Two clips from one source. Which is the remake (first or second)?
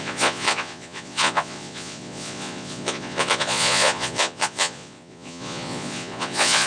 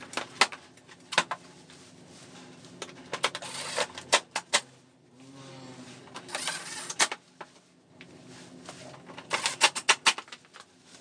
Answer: first